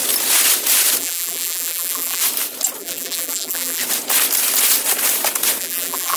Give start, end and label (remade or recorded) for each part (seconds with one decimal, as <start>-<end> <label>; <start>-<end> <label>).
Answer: 0.0-1.0 recorded; 1.0-2.2 remade; 2.2-2.8 recorded; 2.8-3.8 remade; 3.8-5.6 recorded; 5.6-6.2 remade